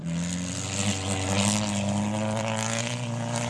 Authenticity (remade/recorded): recorded